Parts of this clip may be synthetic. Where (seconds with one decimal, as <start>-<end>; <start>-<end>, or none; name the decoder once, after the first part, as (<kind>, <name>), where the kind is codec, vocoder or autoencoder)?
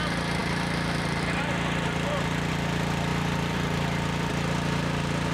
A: 0.4-2.5 (vocoder, BigVGAN v2); 3.1-4.3